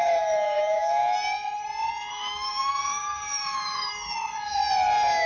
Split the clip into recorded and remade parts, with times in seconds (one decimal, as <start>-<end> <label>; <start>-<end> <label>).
0.0-1.0 remade; 1.0-2.1 recorded; 2.1-4.6 remade; 4.6-5.3 recorded